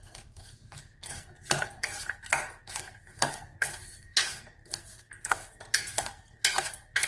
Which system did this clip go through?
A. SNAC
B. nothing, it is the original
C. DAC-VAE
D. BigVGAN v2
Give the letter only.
A